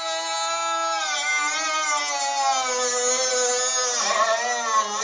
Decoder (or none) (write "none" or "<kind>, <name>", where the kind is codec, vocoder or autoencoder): none